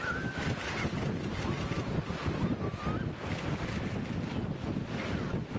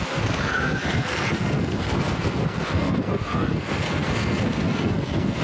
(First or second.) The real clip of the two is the first